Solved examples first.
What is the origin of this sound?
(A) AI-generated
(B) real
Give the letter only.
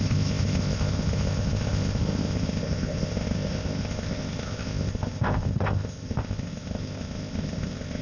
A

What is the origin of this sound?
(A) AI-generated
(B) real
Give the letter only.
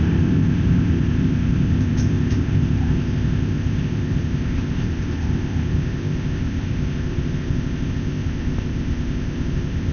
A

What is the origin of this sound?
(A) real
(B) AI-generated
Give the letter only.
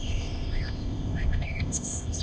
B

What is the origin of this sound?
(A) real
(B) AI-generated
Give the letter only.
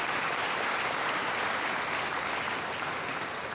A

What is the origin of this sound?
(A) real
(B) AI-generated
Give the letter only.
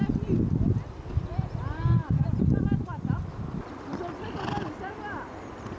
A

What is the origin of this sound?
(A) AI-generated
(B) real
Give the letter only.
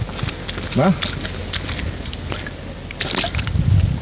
B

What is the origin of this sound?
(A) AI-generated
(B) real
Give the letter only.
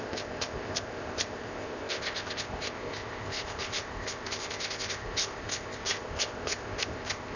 A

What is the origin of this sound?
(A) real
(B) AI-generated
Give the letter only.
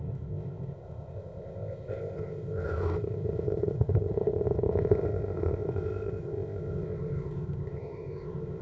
B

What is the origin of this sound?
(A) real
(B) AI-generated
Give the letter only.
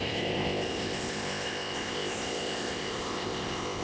B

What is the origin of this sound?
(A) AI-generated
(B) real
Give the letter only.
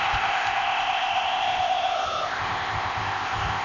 A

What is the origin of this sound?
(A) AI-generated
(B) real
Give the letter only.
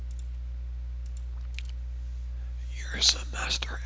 B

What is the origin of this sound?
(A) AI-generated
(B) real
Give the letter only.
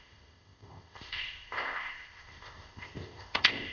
A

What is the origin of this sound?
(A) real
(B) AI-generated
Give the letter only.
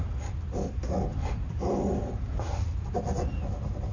A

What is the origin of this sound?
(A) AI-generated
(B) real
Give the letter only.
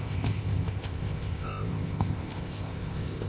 A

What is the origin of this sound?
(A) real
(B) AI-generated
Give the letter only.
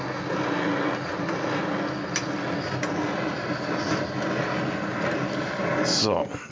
A